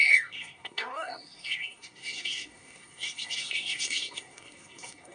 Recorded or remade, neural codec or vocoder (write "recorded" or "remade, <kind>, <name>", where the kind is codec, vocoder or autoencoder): remade, codec, SNAC